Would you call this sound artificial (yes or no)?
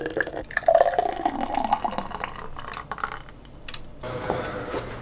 no